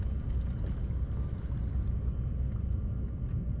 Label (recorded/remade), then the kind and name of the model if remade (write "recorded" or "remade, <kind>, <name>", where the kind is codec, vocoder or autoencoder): recorded